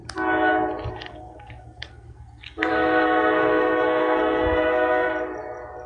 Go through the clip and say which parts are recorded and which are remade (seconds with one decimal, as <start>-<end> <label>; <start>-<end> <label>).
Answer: 0.0-0.9 recorded; 0.9-5.1 remade; 5.1-5.9 recorded